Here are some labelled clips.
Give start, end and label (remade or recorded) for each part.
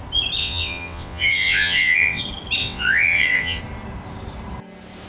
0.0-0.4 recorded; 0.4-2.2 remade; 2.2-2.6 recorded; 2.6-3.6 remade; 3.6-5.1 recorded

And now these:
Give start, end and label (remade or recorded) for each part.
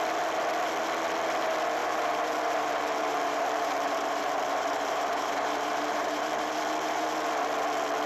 0.0-1.8 recorded; 1.8-6.5 remade; 6.5-8.1 recorded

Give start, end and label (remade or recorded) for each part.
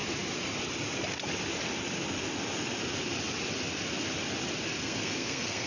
0.0-4.8 recorded; 4.8-5.7 remade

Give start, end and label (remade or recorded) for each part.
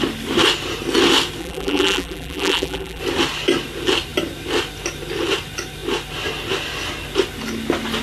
0.0-1.4 recorded; 1.4-3.0 remade; 3.0-8.0 recorded